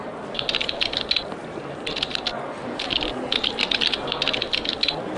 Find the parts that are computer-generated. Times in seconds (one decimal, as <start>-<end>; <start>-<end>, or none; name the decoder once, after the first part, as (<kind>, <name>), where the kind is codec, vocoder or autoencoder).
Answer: none